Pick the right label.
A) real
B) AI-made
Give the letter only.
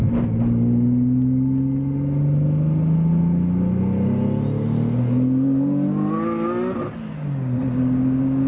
A